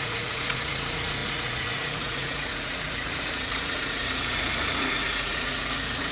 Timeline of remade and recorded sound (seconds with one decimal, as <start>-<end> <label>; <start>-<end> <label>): 0.0-6.1 remade